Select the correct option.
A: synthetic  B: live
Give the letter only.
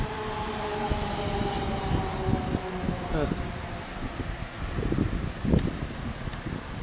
B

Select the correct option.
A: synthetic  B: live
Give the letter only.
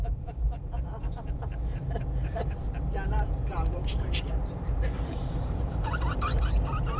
A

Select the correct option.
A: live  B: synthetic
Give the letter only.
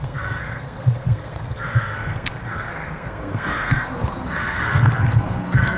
B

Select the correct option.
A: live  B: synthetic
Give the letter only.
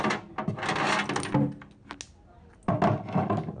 A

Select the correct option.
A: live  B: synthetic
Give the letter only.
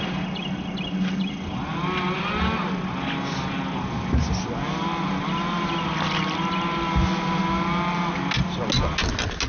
A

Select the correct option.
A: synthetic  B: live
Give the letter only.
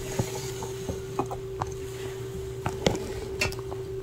B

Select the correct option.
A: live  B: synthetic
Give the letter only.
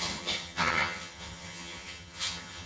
B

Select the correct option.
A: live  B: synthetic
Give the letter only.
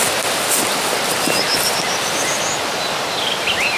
A